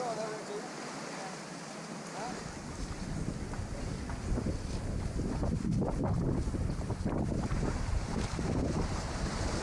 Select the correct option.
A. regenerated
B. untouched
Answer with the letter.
B